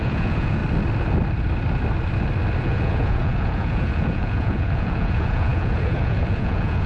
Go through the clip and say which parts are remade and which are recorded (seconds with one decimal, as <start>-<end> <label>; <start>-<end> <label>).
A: 0.0-0.6 remade; 0.6-2.6 recorded; 2.6-6.9 remade